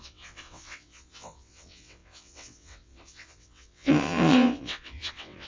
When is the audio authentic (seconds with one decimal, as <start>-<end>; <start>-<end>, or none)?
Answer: none